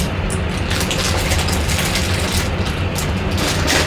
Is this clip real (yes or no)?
yes